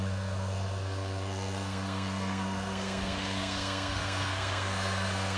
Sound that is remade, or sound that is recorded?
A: remade